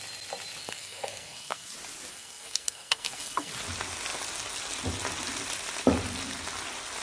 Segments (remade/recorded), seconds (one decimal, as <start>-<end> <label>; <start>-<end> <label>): 0.0-0.6 recorded; 0.6-1.7 remade; 1.7-2.1 recorded; 2.1-3.5 remade; 3.5-7.0 recorded